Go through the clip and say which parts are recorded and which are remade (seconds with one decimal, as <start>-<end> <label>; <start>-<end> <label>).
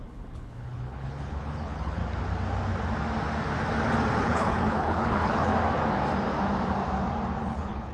0.0-2.0 remade; 2.0-4.2 recorded; 4.2-5.5 remade; 5.5-7.4 recorded; 7.4-7.9 remade